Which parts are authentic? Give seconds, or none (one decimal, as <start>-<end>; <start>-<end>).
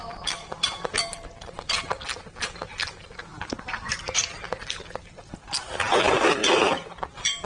0.0-3.3; 5.1-7.5